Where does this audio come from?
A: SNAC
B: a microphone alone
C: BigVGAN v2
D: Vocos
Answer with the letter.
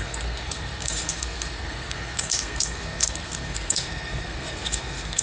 A